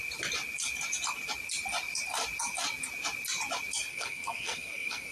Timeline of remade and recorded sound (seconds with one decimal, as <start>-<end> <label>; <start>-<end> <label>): 0.0-3.9 recorded; 3.9-5.1 remade